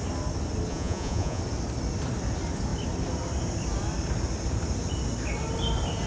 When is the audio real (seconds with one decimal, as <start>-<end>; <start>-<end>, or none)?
0.0-0.7; 1.4-6.1